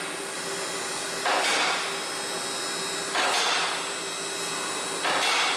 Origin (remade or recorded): recorded